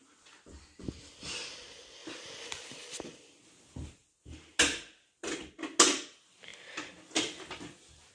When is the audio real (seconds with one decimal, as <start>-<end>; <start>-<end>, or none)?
0.0-8.1